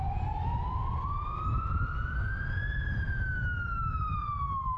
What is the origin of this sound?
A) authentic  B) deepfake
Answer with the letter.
A